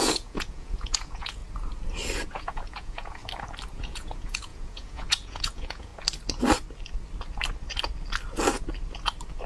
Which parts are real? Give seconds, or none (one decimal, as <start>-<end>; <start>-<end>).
1.4-2.3; 3.2-3.7; 5.9-9.5